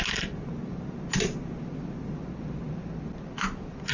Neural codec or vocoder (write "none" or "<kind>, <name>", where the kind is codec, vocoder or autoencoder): none